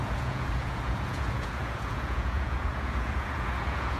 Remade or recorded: remade